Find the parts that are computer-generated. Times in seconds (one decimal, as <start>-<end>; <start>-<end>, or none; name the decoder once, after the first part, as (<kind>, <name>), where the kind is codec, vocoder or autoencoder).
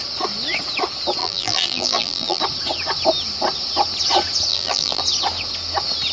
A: 1.2-2.4 (vocoder, BigVGAN v2); 4.5-5.0